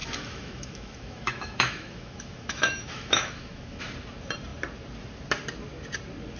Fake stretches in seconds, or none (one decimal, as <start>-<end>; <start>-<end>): 0.0-3.8